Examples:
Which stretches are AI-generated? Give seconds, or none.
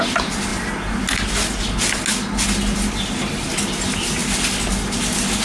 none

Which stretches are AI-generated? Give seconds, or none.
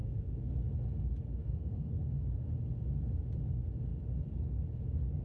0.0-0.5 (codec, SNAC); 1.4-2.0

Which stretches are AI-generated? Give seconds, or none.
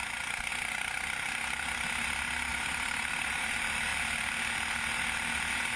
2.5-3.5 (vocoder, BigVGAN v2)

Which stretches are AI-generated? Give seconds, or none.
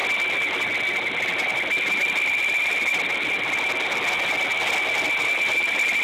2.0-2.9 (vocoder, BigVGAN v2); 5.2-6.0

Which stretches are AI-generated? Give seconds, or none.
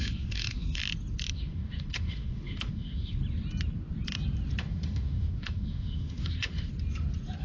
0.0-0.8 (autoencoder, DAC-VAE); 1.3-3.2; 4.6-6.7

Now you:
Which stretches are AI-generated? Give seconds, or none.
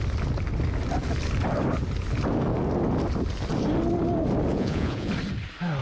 4.5-5.1 (vocoder, Vocos)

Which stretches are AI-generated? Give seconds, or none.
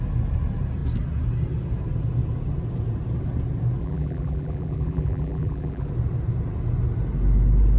3.8-5.9 (vocoder, BigVGAN v2)